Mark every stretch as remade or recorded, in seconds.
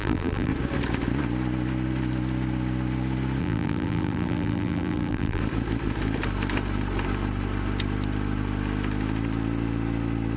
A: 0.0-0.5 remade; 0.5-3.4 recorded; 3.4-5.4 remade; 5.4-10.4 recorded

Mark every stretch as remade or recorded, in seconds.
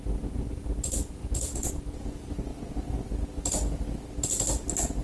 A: 0.0-5.0 recorded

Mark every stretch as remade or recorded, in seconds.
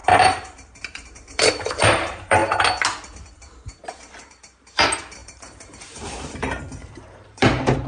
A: 0.0-2.4 remade; 2.4-4.3 recorded; 4.3-7.9 remade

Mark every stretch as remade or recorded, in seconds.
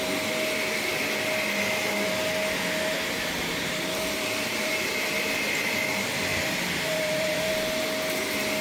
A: 0.0-2.9 recorded; 2.9-4.9 remade; 4.9-6.3 recorded; 6.3-7.5 remade; 7.5-8.6 recorded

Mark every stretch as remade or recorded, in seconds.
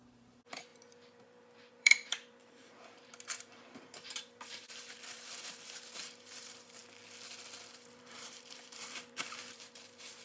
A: 0.0-6.8 remade; 6.8-7.6 recorded; 7.6-10.2 remade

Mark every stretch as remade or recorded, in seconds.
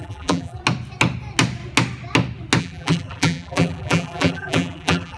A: 0.0-0.6 remade; 0.6-2.6 recorded; 2.6-5.2 remade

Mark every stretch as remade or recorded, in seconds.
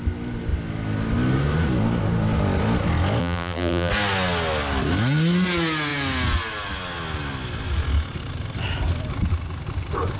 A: 0.0-3.2 recorded; 3.2-3.9 remade; 3.9-10.2 recorded